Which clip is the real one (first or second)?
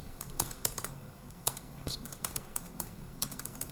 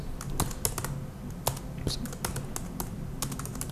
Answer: second